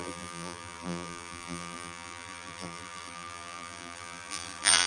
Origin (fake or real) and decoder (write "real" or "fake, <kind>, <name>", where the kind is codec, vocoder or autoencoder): fake, vocoder, BigVGAN v2